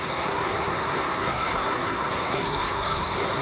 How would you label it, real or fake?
fake